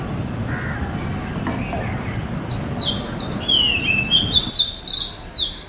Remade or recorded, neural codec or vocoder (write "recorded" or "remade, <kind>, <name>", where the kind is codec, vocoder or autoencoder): recorded